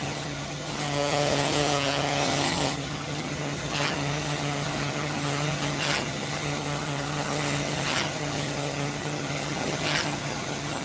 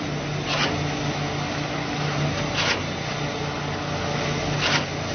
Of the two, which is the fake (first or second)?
first